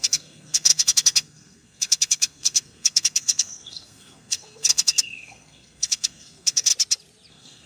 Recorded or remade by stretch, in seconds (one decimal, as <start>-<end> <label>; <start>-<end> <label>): 0.0-6.7 remade; 6.7-7.3 recorded; 7.3-7.7 remade